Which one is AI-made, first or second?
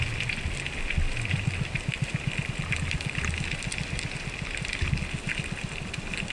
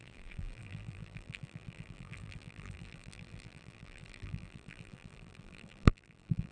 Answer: second